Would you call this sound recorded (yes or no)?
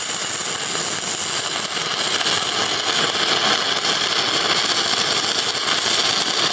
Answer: yes